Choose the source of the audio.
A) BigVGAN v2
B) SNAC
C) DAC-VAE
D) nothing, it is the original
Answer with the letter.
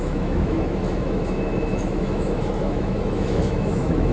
C